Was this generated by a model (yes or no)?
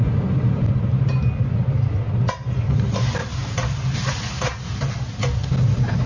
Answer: no